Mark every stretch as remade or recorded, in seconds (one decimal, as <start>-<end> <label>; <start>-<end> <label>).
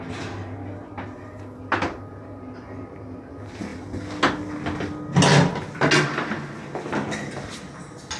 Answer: 0.0-8.2 recorded